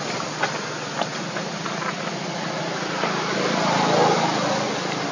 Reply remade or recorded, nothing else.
recorded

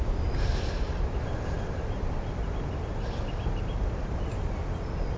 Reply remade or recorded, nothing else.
recorded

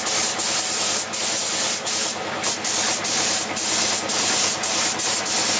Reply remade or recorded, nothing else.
recorded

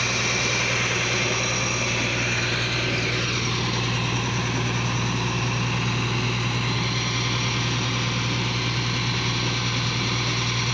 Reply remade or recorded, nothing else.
recorded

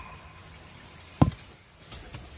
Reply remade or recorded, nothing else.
recorded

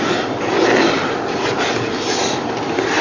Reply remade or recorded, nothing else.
recorded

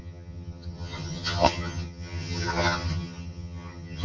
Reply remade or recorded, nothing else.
remade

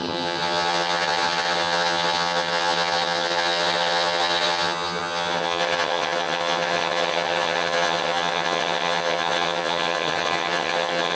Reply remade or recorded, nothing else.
remade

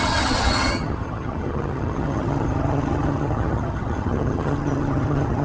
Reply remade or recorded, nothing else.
remade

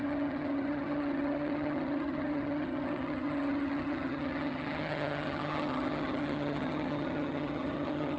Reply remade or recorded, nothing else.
remade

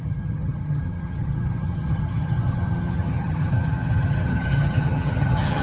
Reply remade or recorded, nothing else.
remade